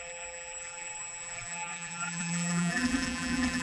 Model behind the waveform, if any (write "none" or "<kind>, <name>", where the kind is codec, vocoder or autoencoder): vocoder, BigVGAN v2